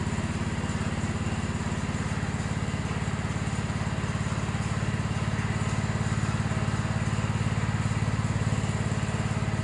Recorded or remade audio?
recorded